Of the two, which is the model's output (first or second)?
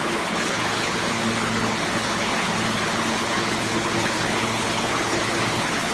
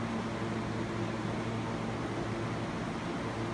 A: first